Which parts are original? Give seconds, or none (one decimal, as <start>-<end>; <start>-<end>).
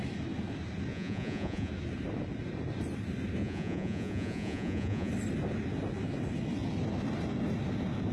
0.0-0.9; 1.7-3.4; 5.1-8.1